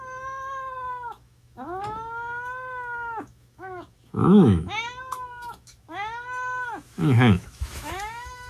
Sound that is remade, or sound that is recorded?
remade